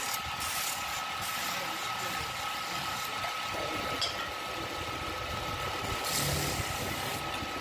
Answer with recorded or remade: recorded